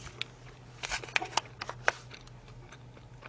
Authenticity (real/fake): real